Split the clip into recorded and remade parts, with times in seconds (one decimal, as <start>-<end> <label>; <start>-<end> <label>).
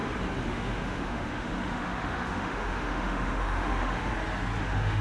0.0-0.5 recorded; 0.5-4.1 remade; 4.1-4.6 recorded; 4.6-5.0 remade